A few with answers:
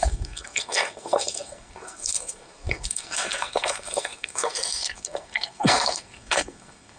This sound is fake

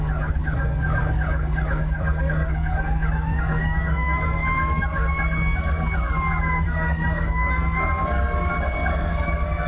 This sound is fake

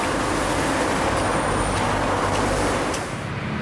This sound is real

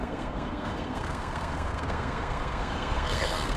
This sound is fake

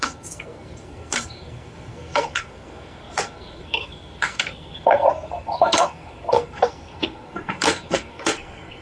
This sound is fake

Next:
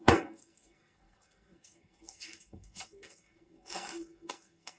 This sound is fake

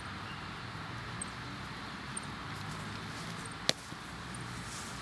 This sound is real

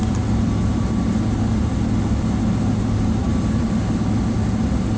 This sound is real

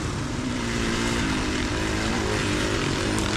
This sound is real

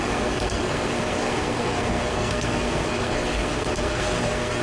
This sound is fake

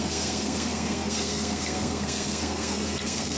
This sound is fake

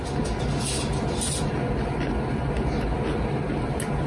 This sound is real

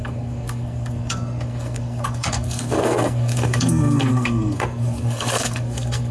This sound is fake